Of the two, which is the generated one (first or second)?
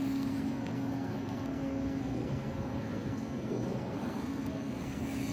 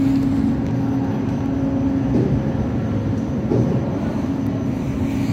first